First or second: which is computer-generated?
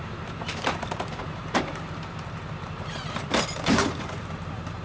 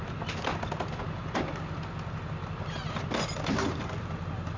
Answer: first